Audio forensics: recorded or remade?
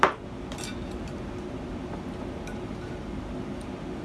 recorded